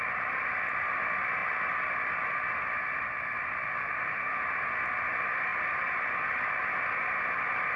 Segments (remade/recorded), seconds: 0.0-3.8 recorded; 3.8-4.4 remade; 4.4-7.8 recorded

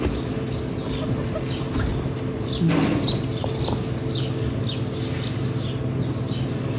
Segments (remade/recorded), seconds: 0.0-6.8 recorded

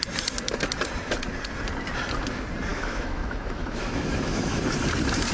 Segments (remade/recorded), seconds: 0.0-2.7 recorded; 2.7-4.6 remade; 4.6-5.3 recorded

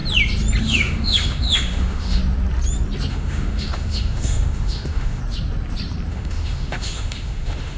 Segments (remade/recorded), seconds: 0.0-0.6 recorded; 0.6-2.2 remade; 2.2-3.1 recorded; 3.1-5.2 remade; 5.2-6.1 recorded; 6.1-7.8 remade

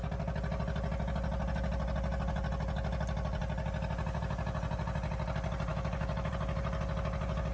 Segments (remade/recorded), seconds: 0.0-5.7 recorded; 5.7-6.3 remade; 6.3-7.5 recorded